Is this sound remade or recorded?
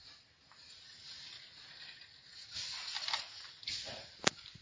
recorded